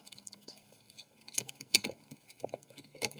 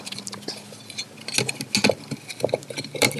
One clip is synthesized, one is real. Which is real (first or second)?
second